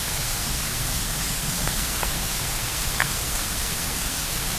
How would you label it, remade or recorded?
remade